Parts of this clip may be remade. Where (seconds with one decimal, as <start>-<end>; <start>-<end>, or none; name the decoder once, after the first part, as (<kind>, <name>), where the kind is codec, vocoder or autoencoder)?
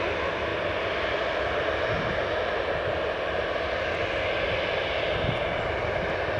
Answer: none